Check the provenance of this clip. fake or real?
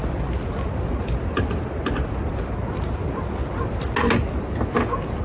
real